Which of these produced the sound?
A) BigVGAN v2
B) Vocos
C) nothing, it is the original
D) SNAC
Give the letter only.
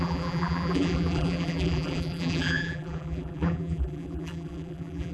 A